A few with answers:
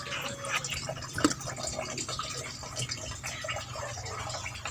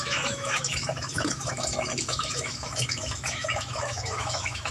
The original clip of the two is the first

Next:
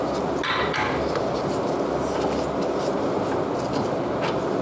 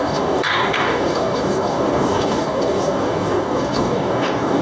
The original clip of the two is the first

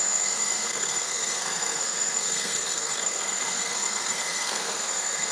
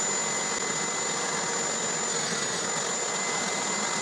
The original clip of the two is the second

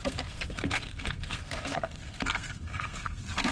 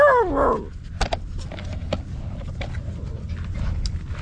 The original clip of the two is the second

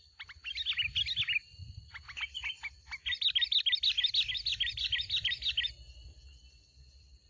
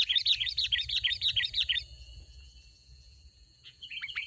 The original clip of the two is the first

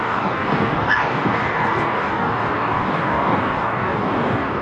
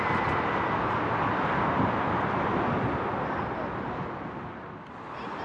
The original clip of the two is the second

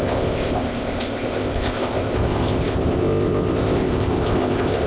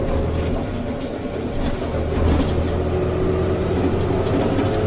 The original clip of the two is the second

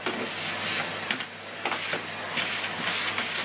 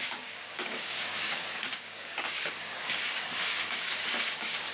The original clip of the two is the first